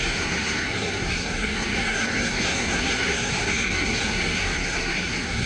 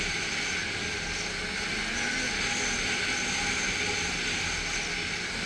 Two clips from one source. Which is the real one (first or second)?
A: second